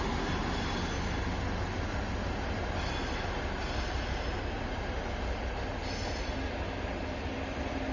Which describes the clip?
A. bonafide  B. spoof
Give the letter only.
A